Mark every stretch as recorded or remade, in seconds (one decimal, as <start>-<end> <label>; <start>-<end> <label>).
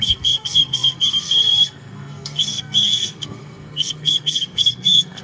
0.0-5.2 remade